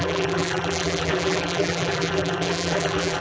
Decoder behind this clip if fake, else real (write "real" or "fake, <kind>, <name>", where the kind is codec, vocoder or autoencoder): fake, vocoder, BigVGAN v2